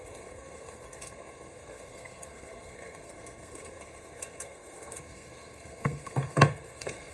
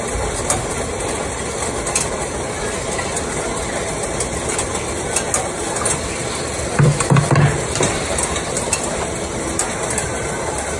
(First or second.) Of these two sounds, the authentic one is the second